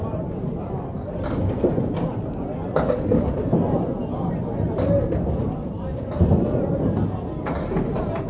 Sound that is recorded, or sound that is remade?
recorded